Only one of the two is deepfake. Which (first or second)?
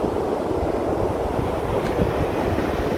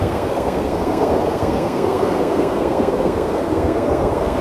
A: second